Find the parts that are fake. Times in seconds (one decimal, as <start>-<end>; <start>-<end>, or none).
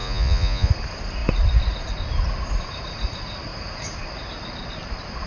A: 0.0-0.7